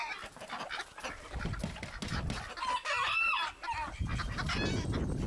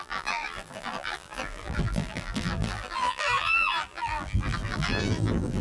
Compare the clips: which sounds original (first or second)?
first